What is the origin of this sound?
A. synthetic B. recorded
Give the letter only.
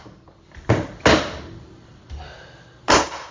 B